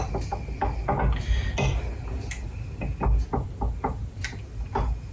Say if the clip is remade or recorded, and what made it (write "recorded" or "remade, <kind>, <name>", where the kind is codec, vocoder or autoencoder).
recorded